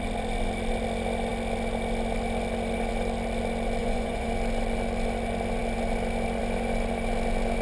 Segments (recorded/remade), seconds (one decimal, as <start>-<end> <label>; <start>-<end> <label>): 0.0-3.8 recorded; 3.8-4.3 remade; 4.3-7.6 recorded